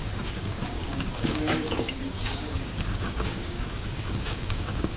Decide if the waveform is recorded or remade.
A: remade